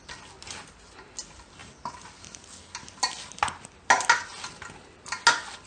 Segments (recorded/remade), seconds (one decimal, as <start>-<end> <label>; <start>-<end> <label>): 0.0-5.7 recorded